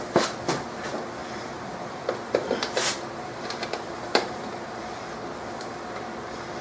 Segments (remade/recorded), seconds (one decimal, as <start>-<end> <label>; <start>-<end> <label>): 0.0-1.2 recorded; 1.2-5.0 remade; 5.0-6.6 recorded